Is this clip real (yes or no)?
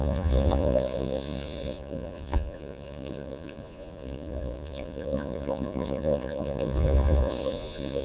no